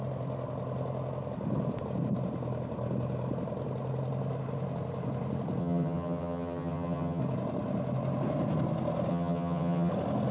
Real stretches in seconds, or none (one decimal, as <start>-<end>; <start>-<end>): 0.0-5.6; 7.2-9.1; 9.9-10.3

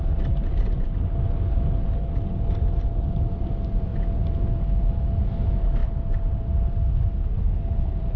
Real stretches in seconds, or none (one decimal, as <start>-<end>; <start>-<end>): 0.0-8.2

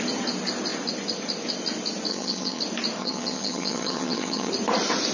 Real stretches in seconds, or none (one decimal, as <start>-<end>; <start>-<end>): 0.0-2.1; 2.6-3.0; 4.5-5.1

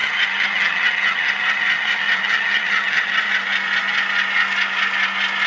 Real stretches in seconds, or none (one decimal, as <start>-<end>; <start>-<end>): 3.3-5.5

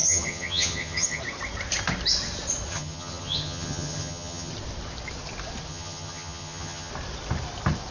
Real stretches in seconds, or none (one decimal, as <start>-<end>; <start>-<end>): 1.2-2.7; 4.5-5.7; 6.9-7.9

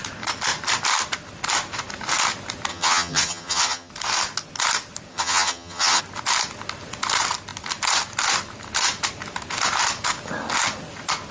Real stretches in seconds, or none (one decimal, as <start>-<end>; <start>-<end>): 0.0-2.7; 3.9-5.1; 6.0-11.3